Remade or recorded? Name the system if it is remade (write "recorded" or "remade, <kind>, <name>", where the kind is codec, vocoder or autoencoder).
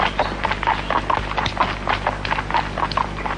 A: recorded